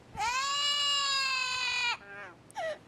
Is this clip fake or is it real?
real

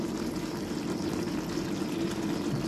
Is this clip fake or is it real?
real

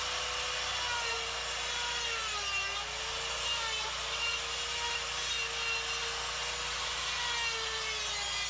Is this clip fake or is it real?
real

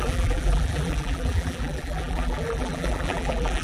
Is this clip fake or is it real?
fake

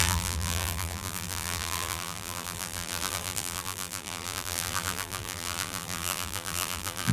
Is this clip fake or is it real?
fake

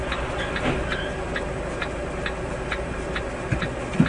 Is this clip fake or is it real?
real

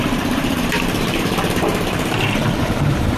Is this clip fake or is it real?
fake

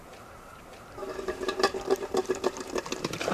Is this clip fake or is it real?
fake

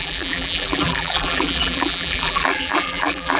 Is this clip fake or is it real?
fake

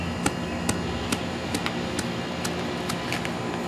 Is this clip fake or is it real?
real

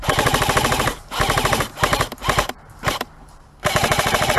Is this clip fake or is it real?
fake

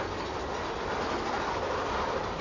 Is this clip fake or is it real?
real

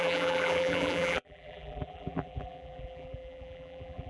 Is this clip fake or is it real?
fake